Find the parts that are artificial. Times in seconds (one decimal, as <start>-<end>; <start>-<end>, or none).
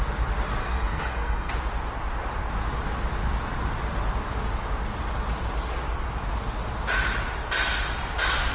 0.6-1.5